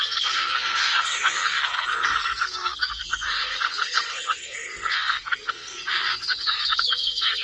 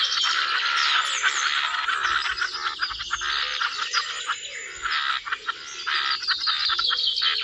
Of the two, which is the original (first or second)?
second